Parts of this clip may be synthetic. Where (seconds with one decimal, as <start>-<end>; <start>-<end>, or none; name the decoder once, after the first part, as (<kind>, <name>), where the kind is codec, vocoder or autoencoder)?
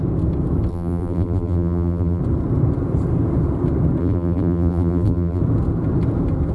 0.7-2.2 (vocoder, BigVGAN v2); 4.0-5.4